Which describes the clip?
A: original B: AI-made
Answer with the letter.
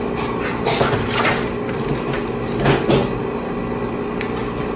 A